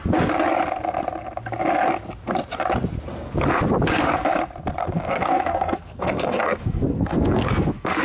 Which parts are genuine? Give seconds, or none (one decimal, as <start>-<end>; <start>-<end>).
0.0-4.8